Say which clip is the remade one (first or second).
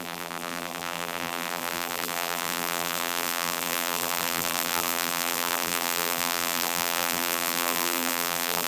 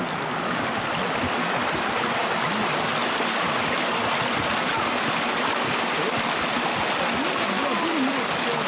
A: first